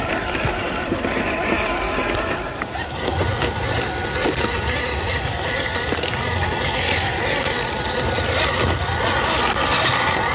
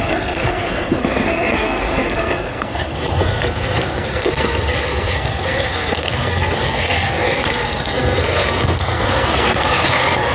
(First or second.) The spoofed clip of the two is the second